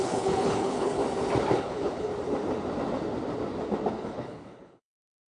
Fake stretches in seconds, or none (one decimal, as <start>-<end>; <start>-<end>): 0.0-1.0; 1.6-2.1; 3.9-5.3